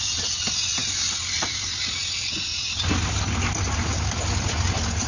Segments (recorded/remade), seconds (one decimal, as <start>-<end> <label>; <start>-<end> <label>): 0.0-5.1 recorded